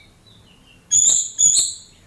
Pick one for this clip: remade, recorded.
recorded